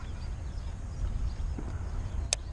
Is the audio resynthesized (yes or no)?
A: no